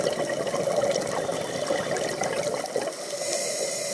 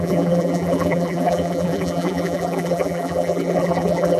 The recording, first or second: first